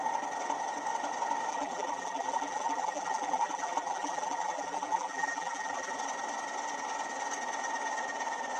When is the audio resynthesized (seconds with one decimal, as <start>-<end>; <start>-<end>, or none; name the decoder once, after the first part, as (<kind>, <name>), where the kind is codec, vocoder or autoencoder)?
1.5-5.9 (vocoder, BigVGAN v2)